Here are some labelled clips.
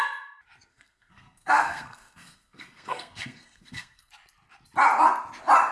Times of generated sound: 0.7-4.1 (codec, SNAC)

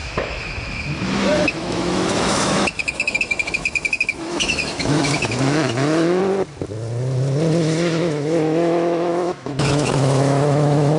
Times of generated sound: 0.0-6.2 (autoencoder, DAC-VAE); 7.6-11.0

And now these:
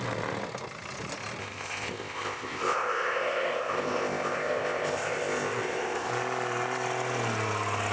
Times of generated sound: 1.4-6.1 (codec, ZipCodec)

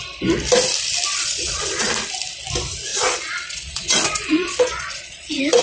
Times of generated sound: 1.1-1.9 (vocoder, Vocos); 2.9-5.6

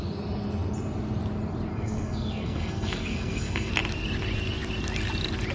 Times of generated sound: 1.7-3.7 (codec, SNAC)

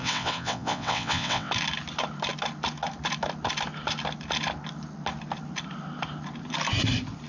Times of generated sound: 0.0-1.5 (vocoder, WaveNeXt)